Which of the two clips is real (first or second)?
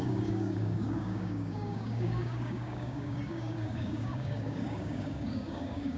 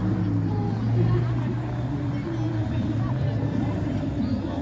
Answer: second